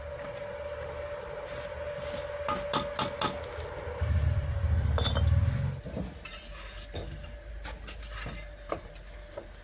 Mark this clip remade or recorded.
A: recorded